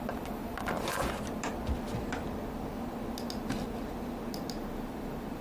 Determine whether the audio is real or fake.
real